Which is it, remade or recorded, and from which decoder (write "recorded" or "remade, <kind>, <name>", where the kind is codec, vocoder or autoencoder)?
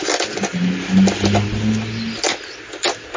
recorded